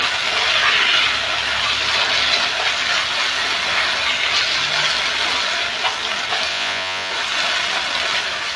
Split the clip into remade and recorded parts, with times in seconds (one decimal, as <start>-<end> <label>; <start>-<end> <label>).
0.0-6.5 recorded; 6.5-7.1 remade; 7.1-8.6 recorded